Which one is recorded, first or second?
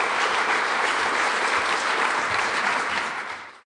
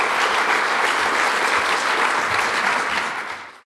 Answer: second